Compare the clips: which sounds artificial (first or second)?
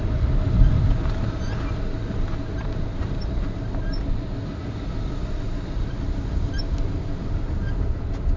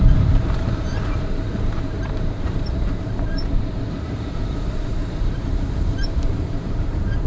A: second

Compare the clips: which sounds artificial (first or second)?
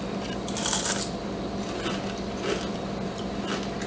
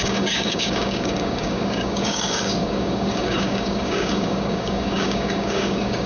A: second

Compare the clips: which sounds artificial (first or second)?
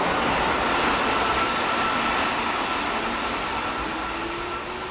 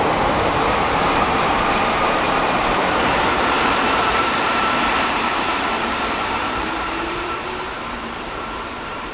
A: second